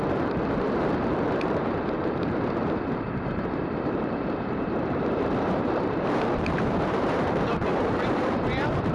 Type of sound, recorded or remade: remade